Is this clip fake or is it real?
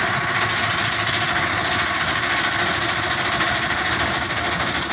real